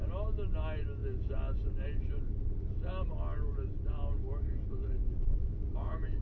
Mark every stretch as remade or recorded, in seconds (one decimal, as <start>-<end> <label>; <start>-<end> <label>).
0.0-6.2 recorded